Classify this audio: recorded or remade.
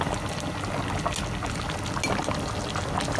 recorded